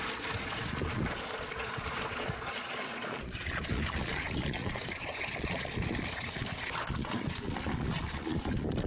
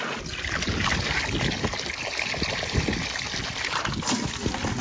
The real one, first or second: second